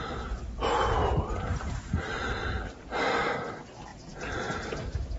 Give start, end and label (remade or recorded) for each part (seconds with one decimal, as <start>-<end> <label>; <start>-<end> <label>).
0.0-3.9 recorded; 3.9-4.5 remade; 4.5-5.2 recorded